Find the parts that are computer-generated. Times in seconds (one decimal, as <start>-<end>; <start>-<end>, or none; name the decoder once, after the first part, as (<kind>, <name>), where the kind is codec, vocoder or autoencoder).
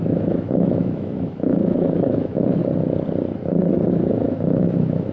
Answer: 0.0-2.6 (autoencoder, DAC-VAE); 3.9-5.1